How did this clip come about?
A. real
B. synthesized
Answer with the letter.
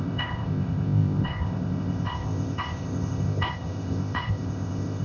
B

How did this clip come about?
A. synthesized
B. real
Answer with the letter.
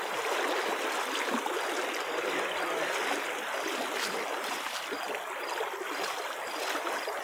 B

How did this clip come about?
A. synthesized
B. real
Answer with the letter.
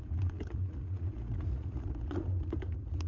A